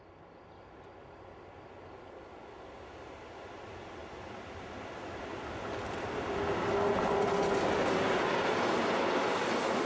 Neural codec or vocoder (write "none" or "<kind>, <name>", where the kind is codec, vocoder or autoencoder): none